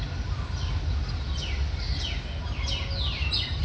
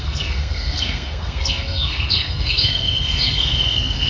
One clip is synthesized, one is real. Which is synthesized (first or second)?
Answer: second